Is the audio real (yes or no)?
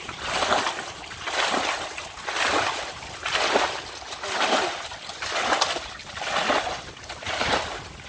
yes